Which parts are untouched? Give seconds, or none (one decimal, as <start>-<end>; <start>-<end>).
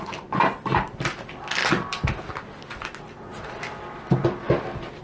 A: 0.0-1.6; 2.2-5.0